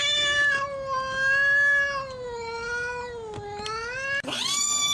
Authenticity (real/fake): real